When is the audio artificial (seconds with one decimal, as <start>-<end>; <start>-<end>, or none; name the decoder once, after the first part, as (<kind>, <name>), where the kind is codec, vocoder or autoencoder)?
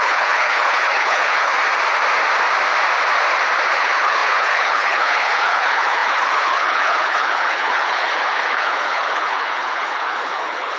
0.0-1.5 (codec, HILCodec); 3.7-10.8